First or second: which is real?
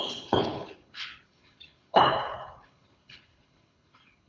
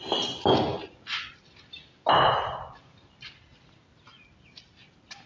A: second